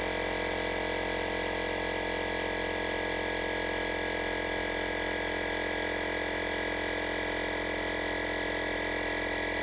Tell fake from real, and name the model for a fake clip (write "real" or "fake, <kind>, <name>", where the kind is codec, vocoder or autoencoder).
real